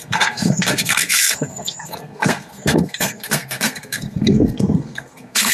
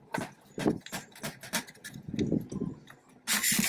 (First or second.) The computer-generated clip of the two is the first